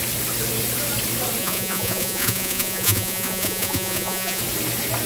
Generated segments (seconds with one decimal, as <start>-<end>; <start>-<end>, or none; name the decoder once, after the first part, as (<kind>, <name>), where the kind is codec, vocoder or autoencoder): 1.4-4.4 (vocoder, Vocos)